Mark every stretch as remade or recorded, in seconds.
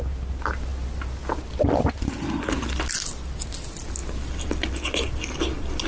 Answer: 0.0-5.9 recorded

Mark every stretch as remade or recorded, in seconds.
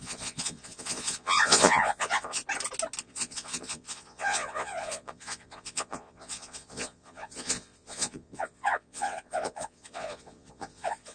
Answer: 0.0-2.4 remade; 2.4-3.0 recorded; 3.0-11.1 remade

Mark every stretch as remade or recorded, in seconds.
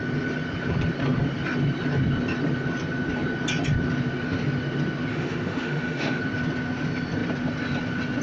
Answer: 0.0-5.1 recorded; 5.1-6.2 remade; 6.2-8.2 recorded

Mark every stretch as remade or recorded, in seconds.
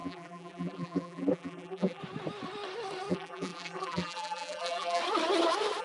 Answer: 0.0-2.0 remade; 2.0-3.1 recorded; 3.1-5.0 remade; 5.0-5.8 recorded